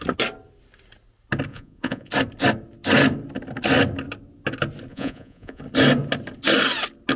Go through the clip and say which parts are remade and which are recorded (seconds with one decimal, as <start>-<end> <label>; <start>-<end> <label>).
0.0-1.5 recorded; 1.5-2.1 remade; 2.1-4.9 recorded; 4.9-5.6 remade; 5.6-7.2 recorded